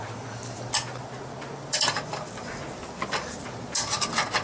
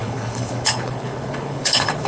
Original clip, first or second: first